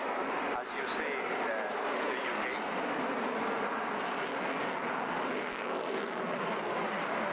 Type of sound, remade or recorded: recorded